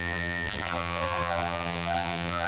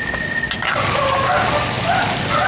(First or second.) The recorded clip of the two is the second